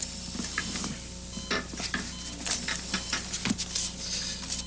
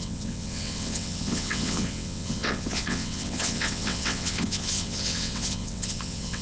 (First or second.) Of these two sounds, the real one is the first